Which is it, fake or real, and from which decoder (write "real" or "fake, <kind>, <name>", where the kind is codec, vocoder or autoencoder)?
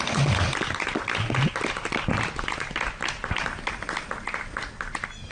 real